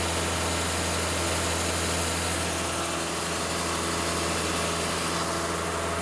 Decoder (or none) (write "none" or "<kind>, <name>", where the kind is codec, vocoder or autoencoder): none